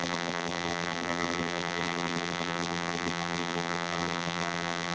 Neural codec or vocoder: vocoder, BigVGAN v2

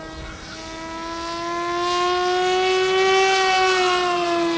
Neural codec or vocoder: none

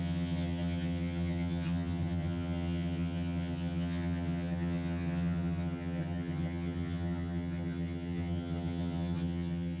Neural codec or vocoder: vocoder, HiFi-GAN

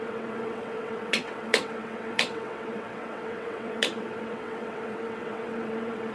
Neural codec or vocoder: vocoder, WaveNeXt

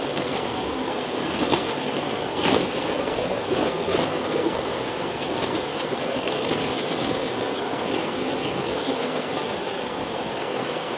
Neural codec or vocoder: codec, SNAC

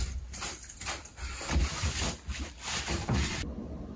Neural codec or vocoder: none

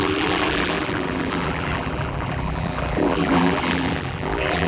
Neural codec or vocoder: vocoder, BigVGAN v2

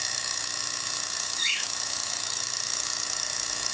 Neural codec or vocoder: autoencoder, DAC-VAE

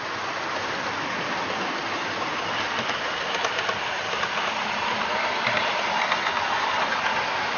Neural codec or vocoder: none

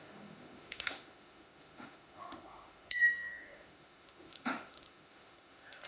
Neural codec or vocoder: autoencoder, DAC-VAE